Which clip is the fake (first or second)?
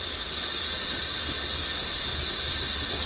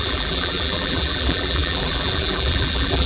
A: second